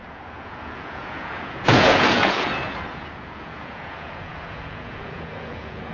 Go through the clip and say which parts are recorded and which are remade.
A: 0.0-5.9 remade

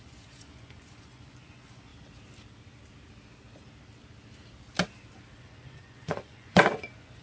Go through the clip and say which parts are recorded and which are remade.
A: 0.0-1.9 remade; 1.9-5.4 recorded; 5.4-7.2 remade

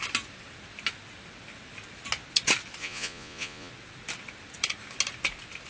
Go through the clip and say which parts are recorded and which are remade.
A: 0.0-2.8 recorded; 2.8-3.7 remade; 3.7-5.7 recorded

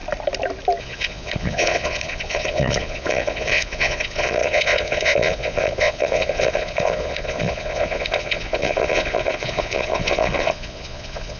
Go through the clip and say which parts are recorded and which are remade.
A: 0.0-0.8 recorded; 0.8-11.4 remade